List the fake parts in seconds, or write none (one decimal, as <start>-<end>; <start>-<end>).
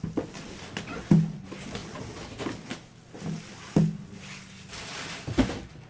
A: none